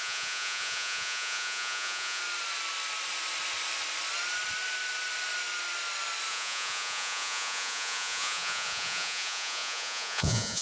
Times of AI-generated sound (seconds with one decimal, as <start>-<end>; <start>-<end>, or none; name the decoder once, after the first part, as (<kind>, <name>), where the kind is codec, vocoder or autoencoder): 0.0-2.2 (vocoder, Vocos); 6.3-10.6